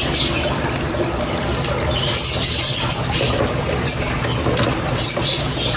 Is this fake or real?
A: real